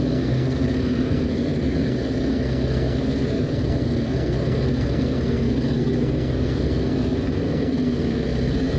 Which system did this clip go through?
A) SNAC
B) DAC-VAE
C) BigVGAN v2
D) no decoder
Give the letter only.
A